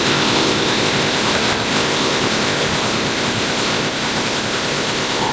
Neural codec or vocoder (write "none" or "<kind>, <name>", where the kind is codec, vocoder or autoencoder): codec, ZipCodec